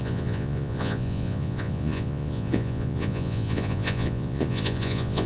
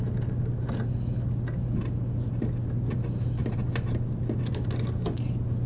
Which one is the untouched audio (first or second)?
second